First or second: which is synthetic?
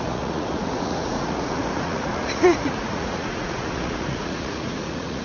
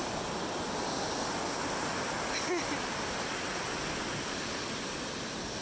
first